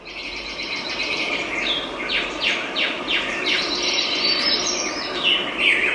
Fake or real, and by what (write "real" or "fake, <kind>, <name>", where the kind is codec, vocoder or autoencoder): fake, vocoder, BigVGAN v2